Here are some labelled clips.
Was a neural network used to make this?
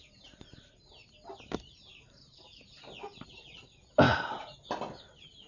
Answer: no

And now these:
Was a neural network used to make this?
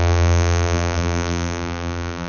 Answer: yes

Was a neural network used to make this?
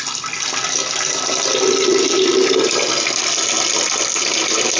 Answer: no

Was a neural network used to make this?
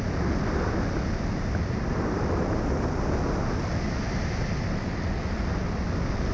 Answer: no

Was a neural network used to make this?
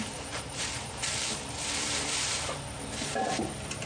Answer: yes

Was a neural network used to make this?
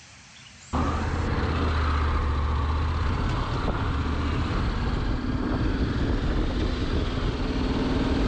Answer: no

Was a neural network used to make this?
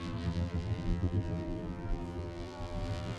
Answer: yes